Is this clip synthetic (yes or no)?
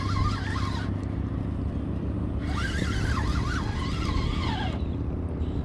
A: no